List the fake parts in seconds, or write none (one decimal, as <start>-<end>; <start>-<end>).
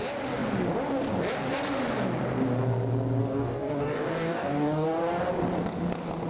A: 3.2-5.3